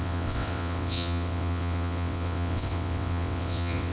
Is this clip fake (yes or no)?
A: yes